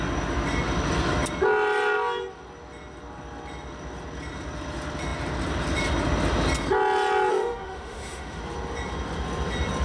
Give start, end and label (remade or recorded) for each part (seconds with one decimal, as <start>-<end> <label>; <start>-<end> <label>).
0.0-7.3 recorded; 7.3-8.4 remade; 8.4-9.8 recorded